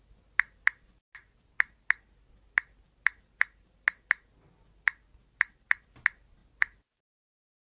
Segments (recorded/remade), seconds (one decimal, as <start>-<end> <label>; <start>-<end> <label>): 0.0-6.4 recorded; 6.4-7.6 remade